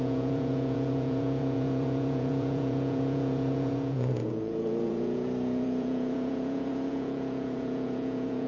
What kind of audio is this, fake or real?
fake